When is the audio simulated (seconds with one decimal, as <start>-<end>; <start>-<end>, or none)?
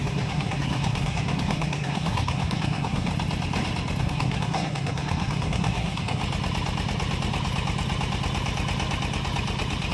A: 0.0-3.1; 4.0-6.2